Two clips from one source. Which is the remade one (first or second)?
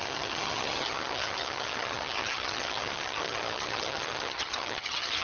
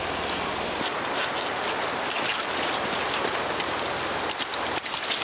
first